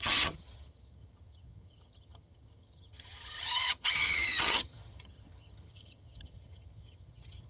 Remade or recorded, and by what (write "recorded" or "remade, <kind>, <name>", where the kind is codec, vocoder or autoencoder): remade, vocoder, HiFi-GAN